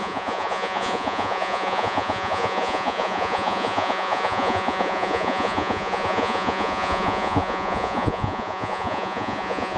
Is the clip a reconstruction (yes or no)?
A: yes